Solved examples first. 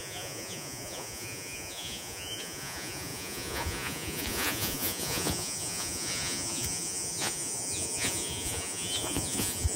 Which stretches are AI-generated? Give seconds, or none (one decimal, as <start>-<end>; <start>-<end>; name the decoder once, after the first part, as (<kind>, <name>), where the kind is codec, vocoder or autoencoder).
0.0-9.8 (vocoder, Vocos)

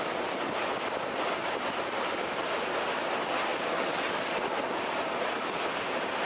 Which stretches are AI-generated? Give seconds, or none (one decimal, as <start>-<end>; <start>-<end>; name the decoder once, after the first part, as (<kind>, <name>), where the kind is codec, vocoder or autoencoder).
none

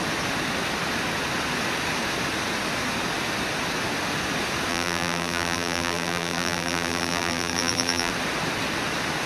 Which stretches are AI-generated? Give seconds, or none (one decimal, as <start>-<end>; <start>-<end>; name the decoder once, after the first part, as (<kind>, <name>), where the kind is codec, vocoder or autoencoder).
4.7-8.1 (vocoder, BigVGAN v2)

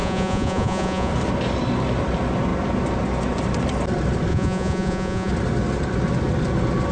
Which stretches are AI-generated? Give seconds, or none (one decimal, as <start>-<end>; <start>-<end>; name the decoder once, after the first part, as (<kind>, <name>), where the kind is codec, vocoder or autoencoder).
0.0-1.1 (vocoder, Vocos); 4.3-5.3

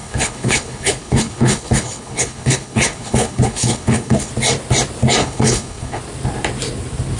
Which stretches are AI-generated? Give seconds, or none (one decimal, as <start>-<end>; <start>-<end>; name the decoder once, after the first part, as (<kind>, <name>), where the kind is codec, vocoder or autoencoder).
0.0-4.3 (codec, HILCodec); 5.2-6.0